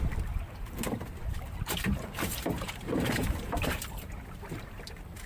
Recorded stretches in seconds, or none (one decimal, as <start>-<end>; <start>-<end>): 0.0-1.2; 4.2-5.3